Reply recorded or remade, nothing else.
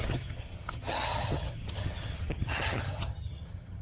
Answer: remade